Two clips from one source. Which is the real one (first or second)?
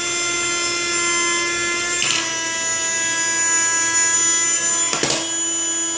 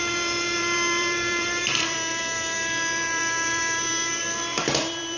first